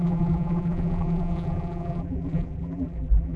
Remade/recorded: remade